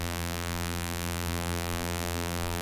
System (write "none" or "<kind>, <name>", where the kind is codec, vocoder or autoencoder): vocoder, BigVGAN v2